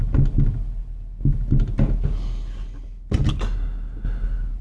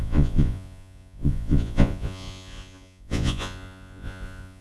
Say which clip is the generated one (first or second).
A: second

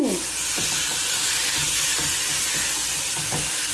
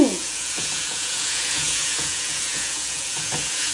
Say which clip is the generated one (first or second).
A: second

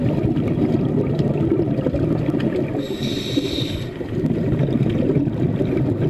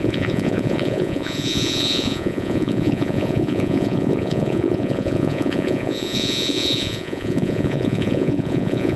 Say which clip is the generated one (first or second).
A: second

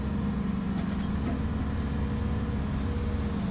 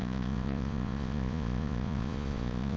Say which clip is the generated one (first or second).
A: second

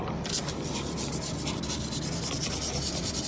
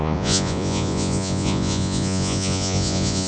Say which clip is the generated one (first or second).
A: second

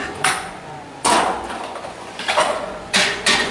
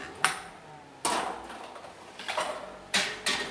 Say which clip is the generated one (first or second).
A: first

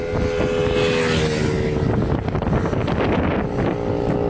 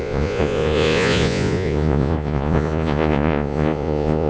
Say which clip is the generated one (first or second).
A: second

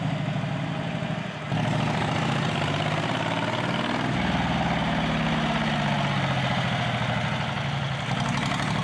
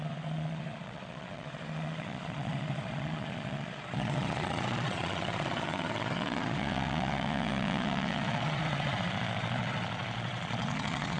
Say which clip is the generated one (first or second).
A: second